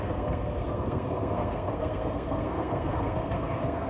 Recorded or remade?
remade